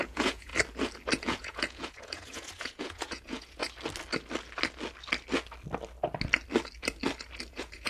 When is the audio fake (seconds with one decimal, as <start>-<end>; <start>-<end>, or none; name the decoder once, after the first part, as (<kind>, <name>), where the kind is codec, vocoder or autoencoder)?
0.0-0.5 (vocoder, Vocos); 1.2-3.6; 7.5-7.9

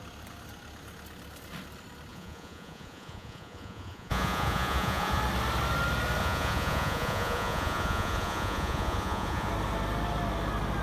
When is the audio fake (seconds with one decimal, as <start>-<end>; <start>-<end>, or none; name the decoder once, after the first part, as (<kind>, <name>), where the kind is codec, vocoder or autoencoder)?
2.1-5.2 (vocoder, Vocos); 6.2-9.5

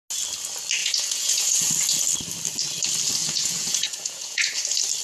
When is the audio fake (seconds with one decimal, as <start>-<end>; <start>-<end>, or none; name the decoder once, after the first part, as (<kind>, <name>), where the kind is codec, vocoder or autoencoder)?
0.8-1.7 (vocoder, Vocos); 3.2-4.5

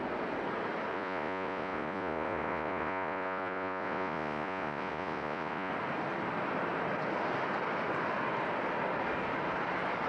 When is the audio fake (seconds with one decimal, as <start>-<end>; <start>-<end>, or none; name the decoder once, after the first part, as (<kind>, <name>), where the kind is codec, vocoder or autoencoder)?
0.9-5.7 (vocoder, Vocos)

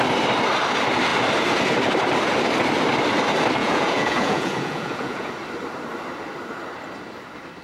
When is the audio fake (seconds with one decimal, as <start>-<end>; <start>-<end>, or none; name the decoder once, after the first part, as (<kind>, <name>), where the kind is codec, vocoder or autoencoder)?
3.6-5.3 (vocoder, Vocos)

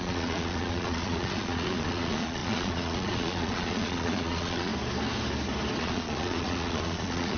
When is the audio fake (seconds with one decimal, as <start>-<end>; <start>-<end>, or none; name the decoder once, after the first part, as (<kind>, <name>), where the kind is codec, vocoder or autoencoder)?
0.0-4.7 (vocoder, Vocos); 5.8-7.4